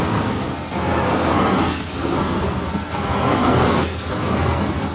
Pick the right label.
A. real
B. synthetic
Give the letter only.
B